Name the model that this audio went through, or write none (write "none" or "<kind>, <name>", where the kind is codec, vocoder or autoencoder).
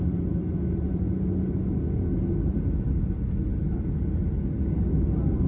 none